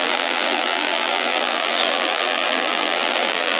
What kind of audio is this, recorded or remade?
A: remade